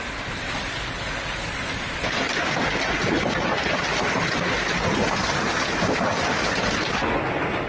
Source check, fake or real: real